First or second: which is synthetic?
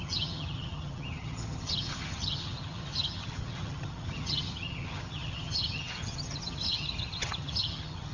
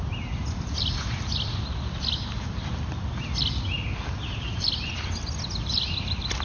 first